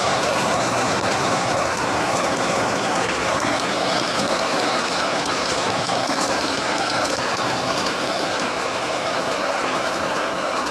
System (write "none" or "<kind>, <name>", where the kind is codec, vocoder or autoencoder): codec, SNAC